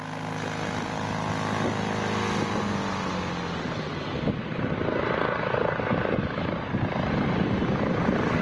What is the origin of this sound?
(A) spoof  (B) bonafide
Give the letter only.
B